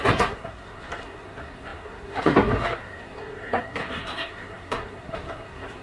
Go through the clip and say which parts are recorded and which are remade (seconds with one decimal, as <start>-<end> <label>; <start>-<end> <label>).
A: 0.0-5.8 remade